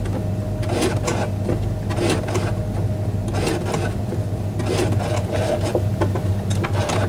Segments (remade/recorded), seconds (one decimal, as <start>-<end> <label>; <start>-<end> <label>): 0.0-7.1 recorded